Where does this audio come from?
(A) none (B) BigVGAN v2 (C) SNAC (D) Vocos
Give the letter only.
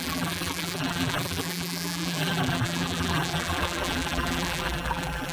B